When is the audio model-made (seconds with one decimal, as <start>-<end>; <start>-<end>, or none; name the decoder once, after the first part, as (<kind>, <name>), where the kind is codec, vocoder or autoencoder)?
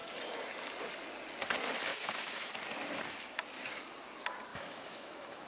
1.9-2.5 (autoencoder, DAC-VAE); 4.5-5.5